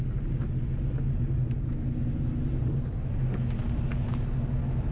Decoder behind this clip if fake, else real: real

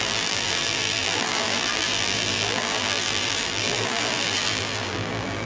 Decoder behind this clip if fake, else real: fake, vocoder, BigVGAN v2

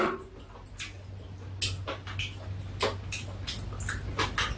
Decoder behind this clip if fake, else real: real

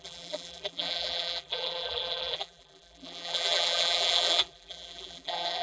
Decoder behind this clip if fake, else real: fake, vocoder, BigVGAN v2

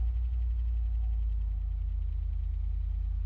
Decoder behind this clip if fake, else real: real